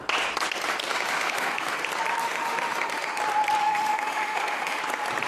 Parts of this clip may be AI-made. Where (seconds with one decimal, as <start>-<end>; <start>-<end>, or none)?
0.9-1.8; 2.2-3.2; 3.6-4.8